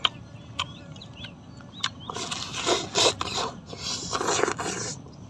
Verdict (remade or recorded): recorded